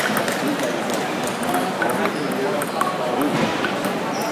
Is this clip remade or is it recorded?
recorded